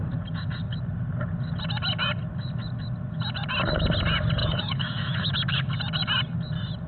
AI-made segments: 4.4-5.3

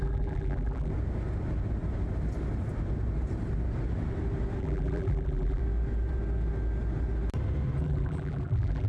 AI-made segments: 0.0-0.9; 4.6-5.6; 7.8-8.9